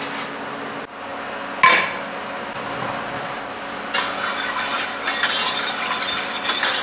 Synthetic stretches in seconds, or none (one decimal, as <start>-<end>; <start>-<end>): none